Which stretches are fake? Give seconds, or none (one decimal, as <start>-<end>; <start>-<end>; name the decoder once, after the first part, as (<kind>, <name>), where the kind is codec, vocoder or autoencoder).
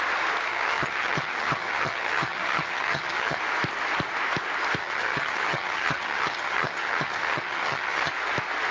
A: 0.5-3.4 (vocoder, HiFi-GAN); 4.8-8.1